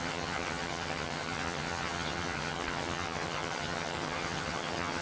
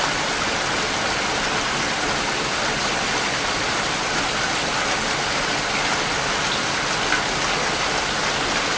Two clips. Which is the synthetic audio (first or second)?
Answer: first